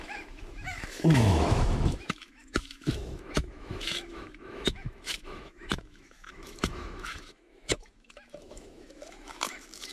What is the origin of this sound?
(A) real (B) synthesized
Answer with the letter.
B